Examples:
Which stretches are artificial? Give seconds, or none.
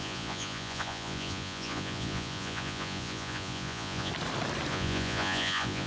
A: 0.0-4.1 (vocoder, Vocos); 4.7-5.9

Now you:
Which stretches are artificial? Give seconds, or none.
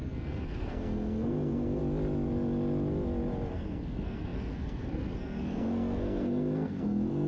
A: 0.0-1.8 (codec, SNAC); 3.5-7.3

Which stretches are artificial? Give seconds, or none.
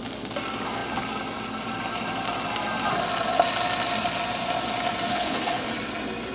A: 5.1-5.7 (codec, HILCodec)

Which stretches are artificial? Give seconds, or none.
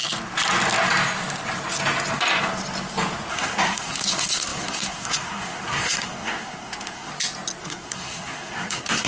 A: 3.3-7.1 (codec, SNAC); 7.6-9.1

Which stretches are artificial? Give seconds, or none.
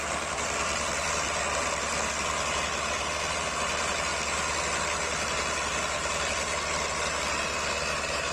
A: none